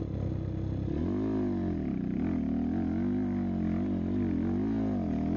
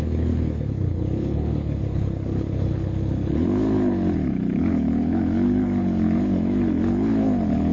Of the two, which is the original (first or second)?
first